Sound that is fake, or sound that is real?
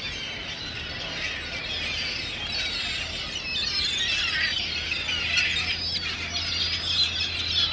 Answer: real